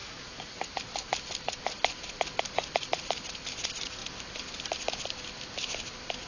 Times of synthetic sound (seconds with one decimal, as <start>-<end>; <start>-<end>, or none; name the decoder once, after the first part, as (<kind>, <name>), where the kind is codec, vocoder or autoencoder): 0.0-0.7 (vocoder, Vocos)